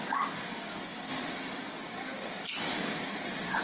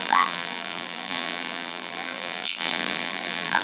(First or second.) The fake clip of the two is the second